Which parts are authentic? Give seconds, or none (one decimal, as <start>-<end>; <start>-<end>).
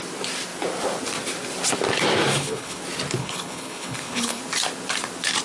0.0-2.3; 2.8-3.2; 4.4-5.4